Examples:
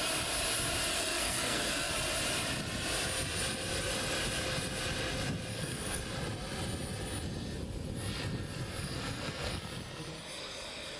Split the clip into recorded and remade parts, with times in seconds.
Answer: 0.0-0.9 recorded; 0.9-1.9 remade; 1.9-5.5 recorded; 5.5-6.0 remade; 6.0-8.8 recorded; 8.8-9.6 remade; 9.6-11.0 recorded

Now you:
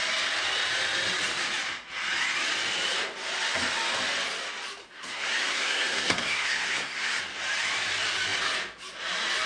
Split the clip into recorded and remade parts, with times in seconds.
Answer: 0.0-4.8 recorded; 4.8-7.2 remade; 7.2-9.5 recorded

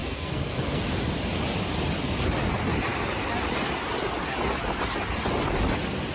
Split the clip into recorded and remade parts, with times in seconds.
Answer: 0.0-0.8 remade; 0.8-6.1 recorded

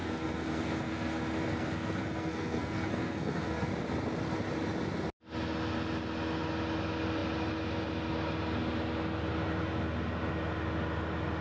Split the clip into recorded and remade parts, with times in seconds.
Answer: 0.0-3.7 remade; 3.7-11.4 recorded

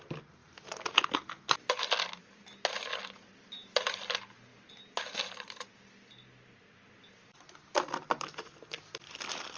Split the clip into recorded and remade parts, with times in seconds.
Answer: 0.0-9.6 recorded

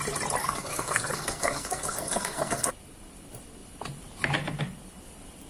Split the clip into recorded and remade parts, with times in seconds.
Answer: 0.0-0.4 recorded; 0.4-2.7 remade; 2.7-5.5 recorded

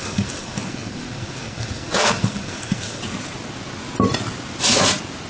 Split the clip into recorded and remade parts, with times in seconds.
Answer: 0.0-3.0 remade; 3.0-5.3 recorded

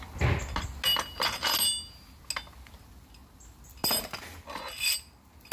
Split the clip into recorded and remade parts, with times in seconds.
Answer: 0.0-5.5 recorded